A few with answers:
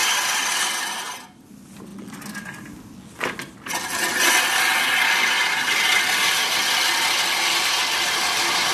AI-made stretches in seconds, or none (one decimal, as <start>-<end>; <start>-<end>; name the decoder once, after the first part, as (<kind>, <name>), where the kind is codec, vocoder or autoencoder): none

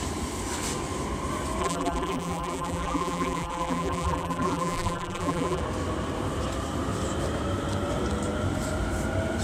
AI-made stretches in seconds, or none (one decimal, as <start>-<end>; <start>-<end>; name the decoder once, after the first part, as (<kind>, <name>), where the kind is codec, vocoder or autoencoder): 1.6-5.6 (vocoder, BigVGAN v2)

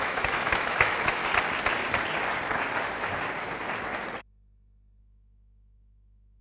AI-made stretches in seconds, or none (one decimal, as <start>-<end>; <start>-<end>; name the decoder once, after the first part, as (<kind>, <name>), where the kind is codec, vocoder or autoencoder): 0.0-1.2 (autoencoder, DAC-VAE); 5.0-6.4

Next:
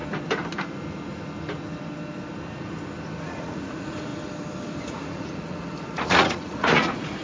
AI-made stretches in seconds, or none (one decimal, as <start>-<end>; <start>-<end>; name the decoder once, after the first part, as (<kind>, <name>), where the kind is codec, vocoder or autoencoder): 3.2-4.1 (vocoder, Vocos); 4.8-7.2

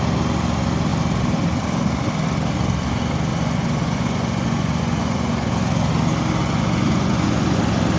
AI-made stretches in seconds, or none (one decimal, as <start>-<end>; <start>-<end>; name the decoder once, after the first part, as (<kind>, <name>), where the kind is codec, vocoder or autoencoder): 3.3-5.5 (vocoder, Vocos); 6.4-7.6

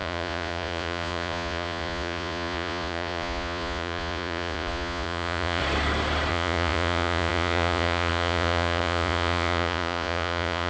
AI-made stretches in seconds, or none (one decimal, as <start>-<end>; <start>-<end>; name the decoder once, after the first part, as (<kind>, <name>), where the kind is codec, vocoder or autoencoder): 0.0-5.6 (vocoder, Vocos); 6.3-10.7

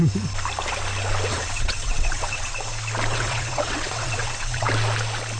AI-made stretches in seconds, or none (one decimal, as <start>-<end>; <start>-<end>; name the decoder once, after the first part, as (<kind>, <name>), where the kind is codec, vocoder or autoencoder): 1.3-2.5 (vocoder, WaveNeXt); 3.1-4.7